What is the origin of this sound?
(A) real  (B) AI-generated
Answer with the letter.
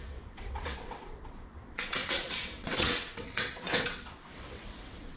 B